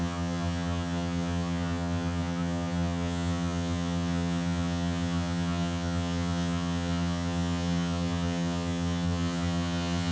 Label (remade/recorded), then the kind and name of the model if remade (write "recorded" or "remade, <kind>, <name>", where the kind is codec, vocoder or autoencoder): remade, vocoder, HiFi-GAN